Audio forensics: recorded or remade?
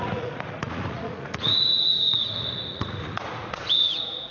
remade